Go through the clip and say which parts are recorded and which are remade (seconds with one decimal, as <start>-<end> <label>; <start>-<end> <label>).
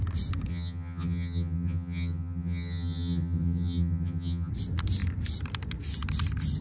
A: 0.0-0.5 recorded; 0.5-4.5 remade; 4.5-6.6 recorded